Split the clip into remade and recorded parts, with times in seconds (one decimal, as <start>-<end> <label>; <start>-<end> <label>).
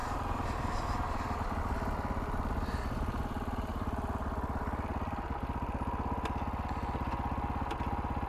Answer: 0.0-1.6 remade; 1.6-3.7 recorded; 3.7-5.7 remade; 5.7-8.3 recorded